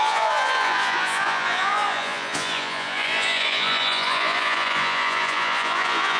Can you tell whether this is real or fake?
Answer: fake